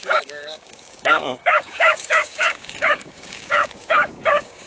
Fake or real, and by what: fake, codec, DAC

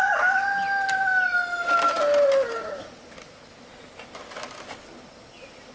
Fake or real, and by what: real